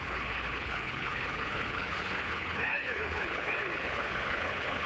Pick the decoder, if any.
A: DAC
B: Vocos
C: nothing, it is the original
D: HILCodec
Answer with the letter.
D